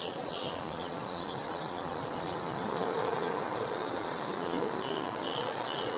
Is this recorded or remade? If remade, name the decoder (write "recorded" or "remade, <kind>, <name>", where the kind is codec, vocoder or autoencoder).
remade, vocoder, Vocos